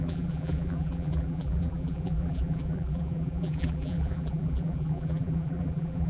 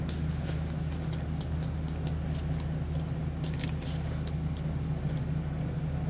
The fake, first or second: first